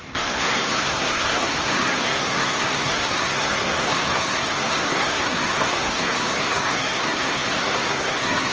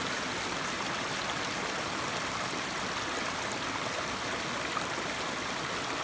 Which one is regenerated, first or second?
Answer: first